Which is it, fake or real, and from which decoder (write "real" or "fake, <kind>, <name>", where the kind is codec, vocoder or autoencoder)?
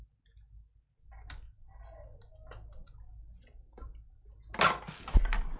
real